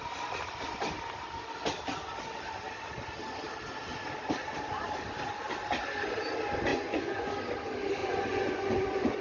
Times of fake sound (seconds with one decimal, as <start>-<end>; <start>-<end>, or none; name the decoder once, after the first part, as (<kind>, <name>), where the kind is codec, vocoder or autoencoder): 6.7-7.3 (vocoder, Vocos); 8.0-9.2